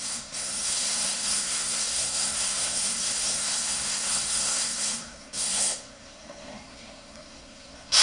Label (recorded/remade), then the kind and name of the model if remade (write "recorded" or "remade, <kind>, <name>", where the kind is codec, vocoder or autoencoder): remade, codec, SNAC